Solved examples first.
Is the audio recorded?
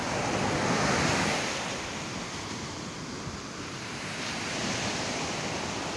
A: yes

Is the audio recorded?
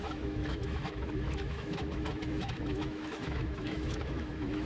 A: no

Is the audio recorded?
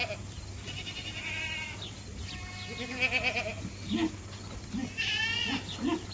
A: yes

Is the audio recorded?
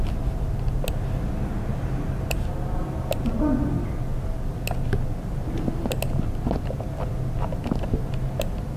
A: yes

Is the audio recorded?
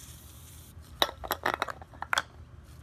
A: yes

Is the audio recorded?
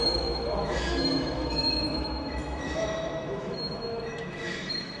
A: no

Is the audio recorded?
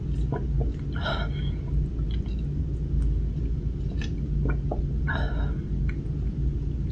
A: yes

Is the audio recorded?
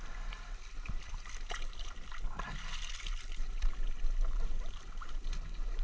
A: yes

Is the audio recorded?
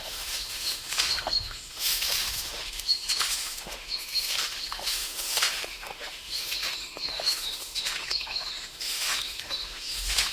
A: no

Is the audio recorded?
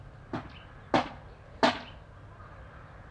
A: yes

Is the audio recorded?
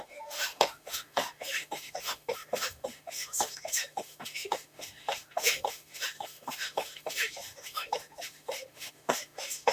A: no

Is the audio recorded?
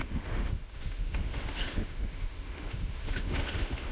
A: no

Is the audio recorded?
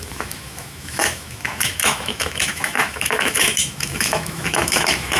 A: no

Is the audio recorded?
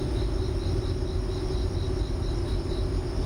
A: yes